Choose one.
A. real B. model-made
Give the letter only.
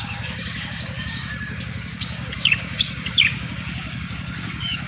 B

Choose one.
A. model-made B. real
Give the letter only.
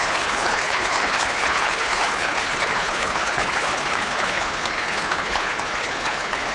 A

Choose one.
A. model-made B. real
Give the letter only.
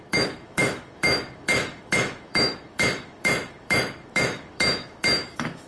A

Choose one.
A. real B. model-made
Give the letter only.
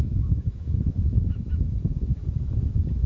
B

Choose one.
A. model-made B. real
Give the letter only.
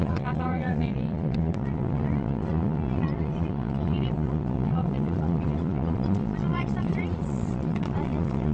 A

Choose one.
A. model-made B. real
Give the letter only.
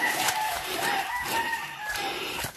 A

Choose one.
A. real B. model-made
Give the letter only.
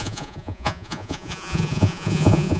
B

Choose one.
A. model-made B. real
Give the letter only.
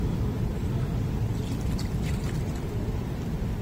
B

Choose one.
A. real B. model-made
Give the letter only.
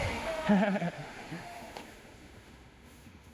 B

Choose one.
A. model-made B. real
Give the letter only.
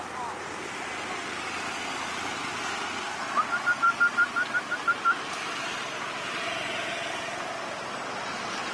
B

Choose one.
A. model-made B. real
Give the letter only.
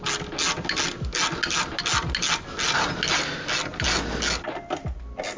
B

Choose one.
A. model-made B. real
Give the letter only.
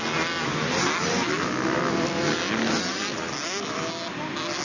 B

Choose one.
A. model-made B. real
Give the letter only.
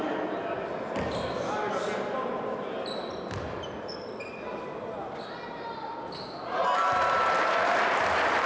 B